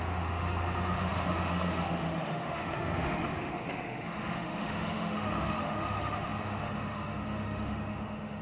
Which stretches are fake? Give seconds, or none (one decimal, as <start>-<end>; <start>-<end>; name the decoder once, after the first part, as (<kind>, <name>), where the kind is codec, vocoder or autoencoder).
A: 0.0-8.4 (autoencoder, DAC-VAE)